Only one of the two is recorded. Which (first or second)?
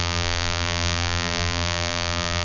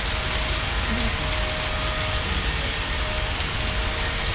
second